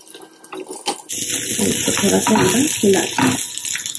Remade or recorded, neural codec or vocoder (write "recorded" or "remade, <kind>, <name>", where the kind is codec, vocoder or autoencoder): recorded